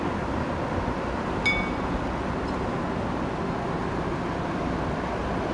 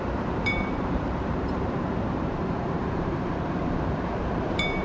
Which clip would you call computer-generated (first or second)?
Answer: second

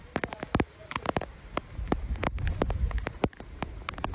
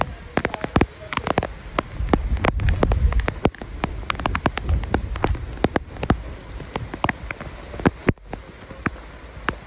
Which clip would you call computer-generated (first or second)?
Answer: first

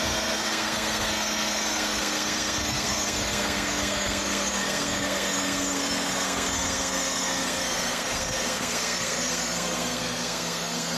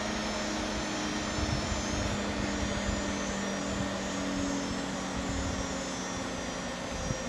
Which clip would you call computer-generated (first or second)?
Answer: first